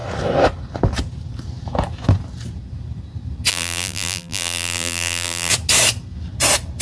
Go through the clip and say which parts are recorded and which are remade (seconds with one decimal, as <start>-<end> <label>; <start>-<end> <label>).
0.0-3.5 recorded; 3.5-5.5 remade; 5.5-6.8 recorded